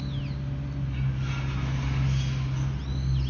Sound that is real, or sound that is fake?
real